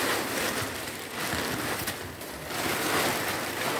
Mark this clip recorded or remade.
recorded